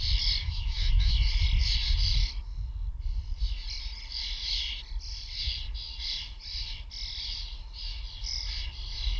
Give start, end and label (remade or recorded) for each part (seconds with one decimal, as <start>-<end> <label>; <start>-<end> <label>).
0.0-0.4 recorded; 0.4-1.1 remade; 1.1-9.2 recorded